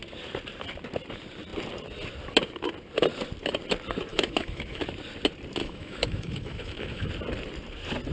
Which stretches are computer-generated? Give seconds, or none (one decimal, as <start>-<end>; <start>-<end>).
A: 4.1-4.8; 5.6-7.1